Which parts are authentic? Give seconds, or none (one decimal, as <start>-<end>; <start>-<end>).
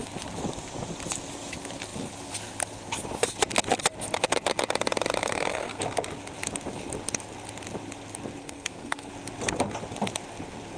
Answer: 0.0-5.2; 5.8-8.4; 9.1-10.8